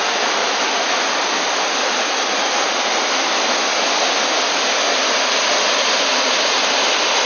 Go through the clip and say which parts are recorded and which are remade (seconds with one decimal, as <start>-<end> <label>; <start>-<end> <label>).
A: 0.0-0.4 recorded; 0.4-0.9 remade; 0.9-7.3 recorded